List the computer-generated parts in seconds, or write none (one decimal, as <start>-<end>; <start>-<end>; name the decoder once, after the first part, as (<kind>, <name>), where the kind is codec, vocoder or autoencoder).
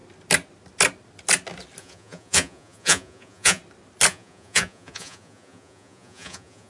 1.8-3.6 (vocoder, Vocos); 4.1-6.7